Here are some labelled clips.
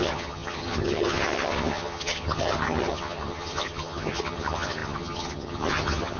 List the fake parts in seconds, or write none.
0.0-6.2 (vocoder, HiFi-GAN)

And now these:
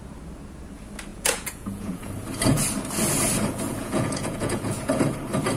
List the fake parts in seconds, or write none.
1.1-2.1 (vocoder, Vocos); 3.7-4.9

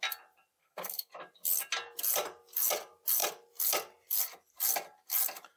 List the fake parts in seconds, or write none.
0.6-1.1 (codec, SNAC)

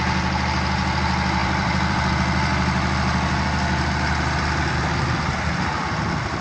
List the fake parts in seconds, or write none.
1.4-2.1 (vocoder, BigVGAN v2)

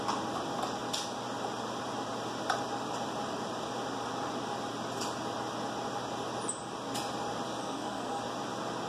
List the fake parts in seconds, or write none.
7.6-8.2 (codec, SNAC)